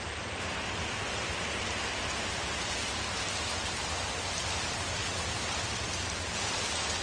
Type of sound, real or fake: real